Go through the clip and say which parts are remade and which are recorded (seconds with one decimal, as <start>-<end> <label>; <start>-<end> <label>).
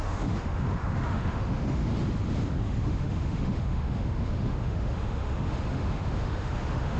0.0-1.9 remade; 1.9-2.5 recorded; 2.5-7.0 remade